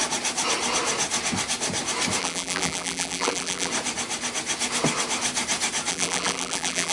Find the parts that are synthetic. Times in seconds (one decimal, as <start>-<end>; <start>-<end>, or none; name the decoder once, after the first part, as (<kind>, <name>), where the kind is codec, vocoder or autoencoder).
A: 2.2-3.7 (vocoder, BigVGAN v2); 5.9-6.9